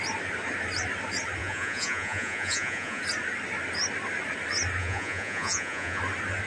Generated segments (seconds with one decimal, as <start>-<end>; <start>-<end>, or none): 1.4-3.0; 4.8-6.0